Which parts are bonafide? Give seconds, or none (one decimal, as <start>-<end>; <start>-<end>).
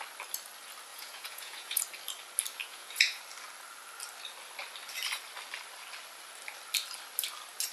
0.0-0.9; 1.8-2.6; 3.2-7.7